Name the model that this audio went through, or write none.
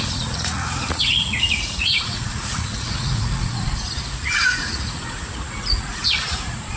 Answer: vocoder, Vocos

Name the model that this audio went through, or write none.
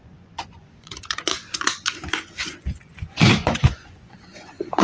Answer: vocoder, Vocos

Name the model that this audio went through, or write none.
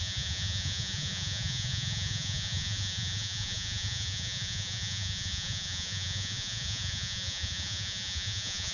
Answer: vocoder, Vocos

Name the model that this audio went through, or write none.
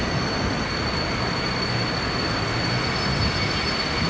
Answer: none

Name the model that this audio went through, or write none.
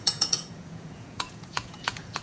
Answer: vocoder, Vocos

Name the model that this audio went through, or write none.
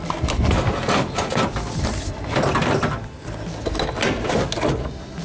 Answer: none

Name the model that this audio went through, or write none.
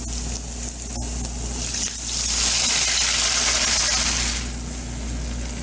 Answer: none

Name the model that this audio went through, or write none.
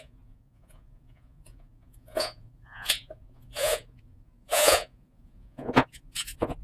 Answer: vocoder, Vocos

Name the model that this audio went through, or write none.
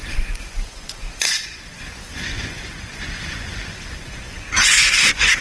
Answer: vocoder, Vocos